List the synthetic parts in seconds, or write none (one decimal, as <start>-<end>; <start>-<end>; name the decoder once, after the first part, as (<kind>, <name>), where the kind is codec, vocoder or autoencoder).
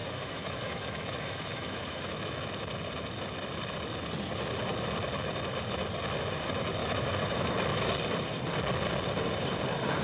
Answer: 0.0-2.5 (autoencoder, DAC-VAE); 6.8-7.9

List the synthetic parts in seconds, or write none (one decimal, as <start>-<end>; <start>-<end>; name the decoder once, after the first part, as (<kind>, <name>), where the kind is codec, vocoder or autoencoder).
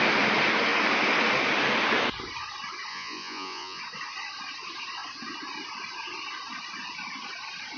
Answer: 2.9-3.8 (vocoder, Vocos)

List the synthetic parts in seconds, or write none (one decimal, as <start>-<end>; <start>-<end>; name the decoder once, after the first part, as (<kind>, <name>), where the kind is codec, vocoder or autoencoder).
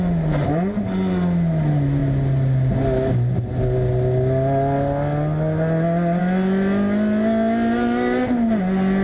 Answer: none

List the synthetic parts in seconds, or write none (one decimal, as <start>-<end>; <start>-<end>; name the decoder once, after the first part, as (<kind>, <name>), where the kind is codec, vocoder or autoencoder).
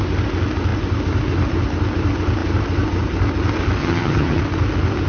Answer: 3.8-4.4 (vocoder, HiFi-GAN)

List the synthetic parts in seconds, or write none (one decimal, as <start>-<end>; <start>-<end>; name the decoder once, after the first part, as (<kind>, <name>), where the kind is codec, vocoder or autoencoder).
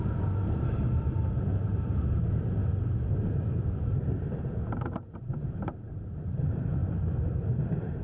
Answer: 0.0-2.6 (vocoder, BigVGAN v2); 3.3-6.8; 7.6-8.0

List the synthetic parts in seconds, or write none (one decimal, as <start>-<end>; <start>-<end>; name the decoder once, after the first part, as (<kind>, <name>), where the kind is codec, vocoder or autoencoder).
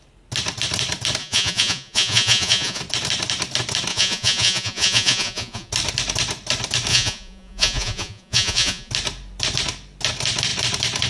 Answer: 1.2-2.8 (vocoder, Vocos); 3.9-5.7; 6.9-8.9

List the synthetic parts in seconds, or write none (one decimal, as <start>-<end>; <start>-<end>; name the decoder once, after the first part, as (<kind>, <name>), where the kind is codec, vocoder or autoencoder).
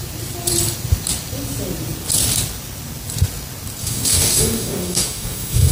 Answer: 3.8-5.7 (codec, DAC)